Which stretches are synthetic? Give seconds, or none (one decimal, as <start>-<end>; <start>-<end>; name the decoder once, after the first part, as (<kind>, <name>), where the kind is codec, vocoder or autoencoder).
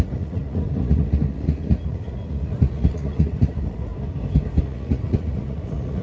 0.0-3.9 (vocoder, Vocos); 4.6-6.0